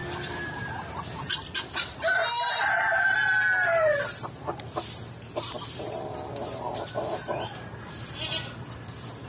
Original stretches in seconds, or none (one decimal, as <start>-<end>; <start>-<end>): 0.0-1.3; 2.2-6.6